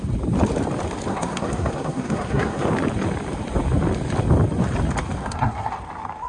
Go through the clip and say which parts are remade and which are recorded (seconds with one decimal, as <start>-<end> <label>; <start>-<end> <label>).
0.0-1.1 recorded; 1.1-2.7 remade; 2.7-5.2 recorded; 5.2-5.7 remade; 5.7-6.3 recorded